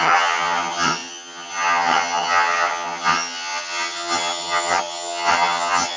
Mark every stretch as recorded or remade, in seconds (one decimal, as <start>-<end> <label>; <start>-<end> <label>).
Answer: 0.0-6.0 remade